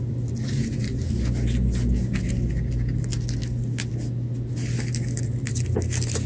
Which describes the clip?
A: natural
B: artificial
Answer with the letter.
A